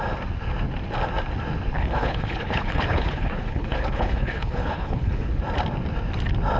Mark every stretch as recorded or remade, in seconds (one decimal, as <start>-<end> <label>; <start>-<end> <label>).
0.0-1.8 recorded; 1.8-5.4 remade; 5.4-6.6 recorded